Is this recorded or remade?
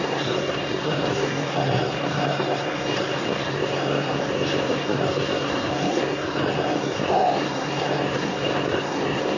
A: remade